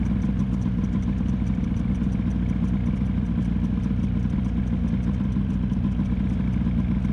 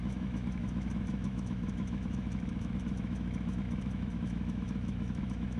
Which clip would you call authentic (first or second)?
first